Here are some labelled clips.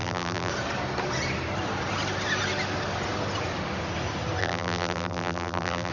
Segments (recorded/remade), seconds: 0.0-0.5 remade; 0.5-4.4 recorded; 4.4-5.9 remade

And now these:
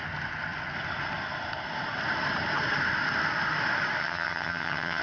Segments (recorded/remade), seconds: 0.0-4.0 recorded; 4.0-5.0 remade

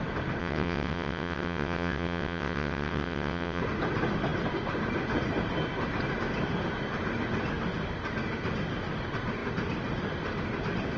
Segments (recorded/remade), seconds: 0.0-0.4 recorded; 0.4-3.6 remade; 3.6-11.0 recorded

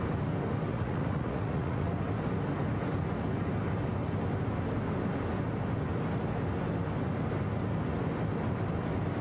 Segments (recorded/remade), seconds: 0.0-0.7 recorded; 0.7-1.9 remade; 1.9-9.2 recorded

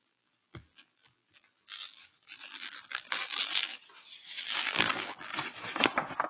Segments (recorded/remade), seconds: 0.0-3.8 remade; 3.8-4.4 recorded; 4.4-5.3 remade; 5.3-6.3 recorded

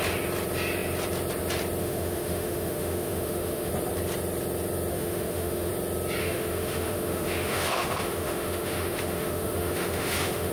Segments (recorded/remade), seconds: 0.0-1.8 recorded; 1.8-3.7 remade; 3.7-4.9 recorded; 4.9-5.7 remade; 5.7-6.2 recorded; 6.2-10.5 remade

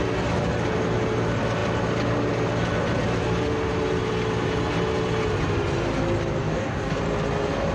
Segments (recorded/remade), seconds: 0.0-6.4 recorded; 6.4-7.0 remade; 7.0-7.7 recorded